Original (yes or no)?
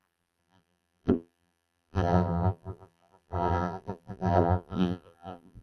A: no